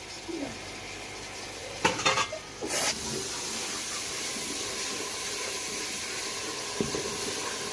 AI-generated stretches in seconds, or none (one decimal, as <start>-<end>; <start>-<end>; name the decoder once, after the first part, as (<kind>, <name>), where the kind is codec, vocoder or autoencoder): none